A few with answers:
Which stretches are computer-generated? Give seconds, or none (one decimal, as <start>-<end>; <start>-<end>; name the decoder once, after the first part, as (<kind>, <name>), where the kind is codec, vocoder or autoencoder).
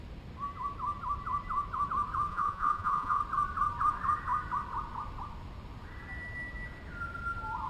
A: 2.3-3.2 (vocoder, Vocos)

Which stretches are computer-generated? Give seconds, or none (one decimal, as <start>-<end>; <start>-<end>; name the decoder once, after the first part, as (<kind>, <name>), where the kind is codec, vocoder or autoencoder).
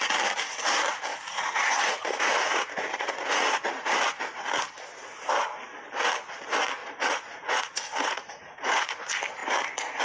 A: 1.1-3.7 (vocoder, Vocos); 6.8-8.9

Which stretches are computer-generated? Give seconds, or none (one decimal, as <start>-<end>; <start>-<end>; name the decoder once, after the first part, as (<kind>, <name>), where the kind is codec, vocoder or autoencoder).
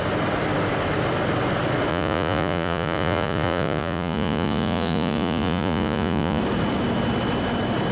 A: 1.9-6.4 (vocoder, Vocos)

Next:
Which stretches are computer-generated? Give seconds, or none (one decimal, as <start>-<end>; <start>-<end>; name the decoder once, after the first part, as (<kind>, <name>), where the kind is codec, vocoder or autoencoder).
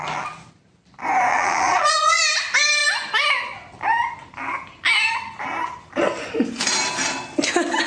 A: 1.3-2.2 (vocoder, Vocos)